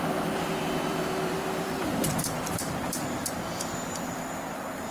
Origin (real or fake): fake